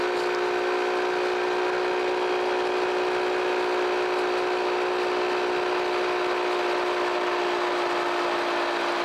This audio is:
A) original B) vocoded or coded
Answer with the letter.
A